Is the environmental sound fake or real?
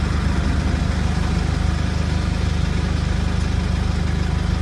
real